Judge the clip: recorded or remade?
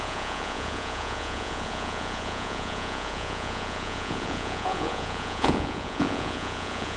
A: remade